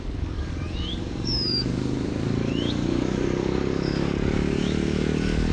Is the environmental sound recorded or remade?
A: remade